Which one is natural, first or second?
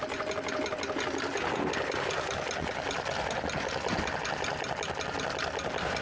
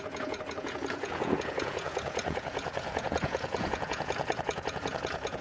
first